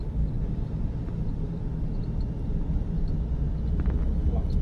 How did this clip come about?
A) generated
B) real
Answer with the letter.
B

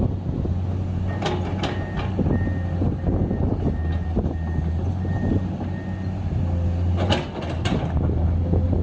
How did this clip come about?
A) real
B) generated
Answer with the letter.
A